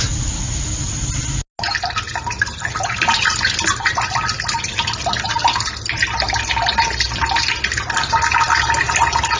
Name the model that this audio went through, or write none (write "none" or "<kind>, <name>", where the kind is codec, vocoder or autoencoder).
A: none